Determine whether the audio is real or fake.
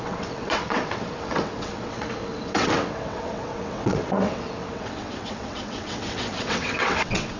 fake